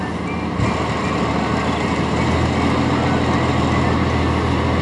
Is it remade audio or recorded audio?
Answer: recorded